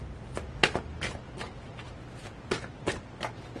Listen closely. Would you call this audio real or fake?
real